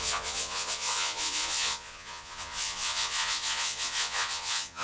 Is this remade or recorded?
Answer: remade